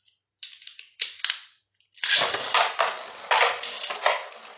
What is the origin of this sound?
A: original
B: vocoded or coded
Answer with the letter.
A